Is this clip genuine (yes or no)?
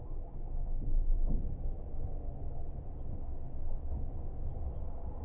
yes